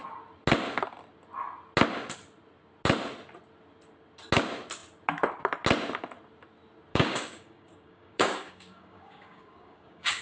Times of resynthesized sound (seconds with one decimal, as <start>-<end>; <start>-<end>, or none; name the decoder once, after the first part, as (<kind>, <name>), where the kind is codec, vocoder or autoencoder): 6.9-10.2 (codec, DAC)